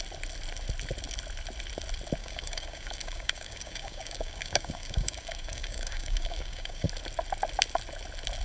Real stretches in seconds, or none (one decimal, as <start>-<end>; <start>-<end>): 0.0-2.2; 6.9-8.4